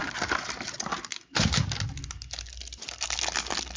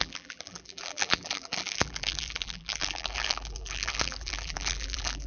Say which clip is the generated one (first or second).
second